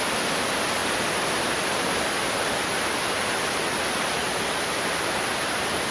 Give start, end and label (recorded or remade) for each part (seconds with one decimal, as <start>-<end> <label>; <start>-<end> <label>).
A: 0.0-5.9 recorded